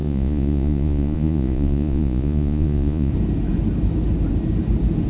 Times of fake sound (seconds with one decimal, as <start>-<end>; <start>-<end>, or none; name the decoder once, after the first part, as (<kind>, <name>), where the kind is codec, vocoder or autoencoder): 0.0-3.1 (vocoder, Vocos)